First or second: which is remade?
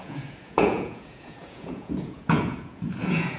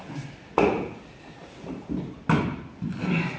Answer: first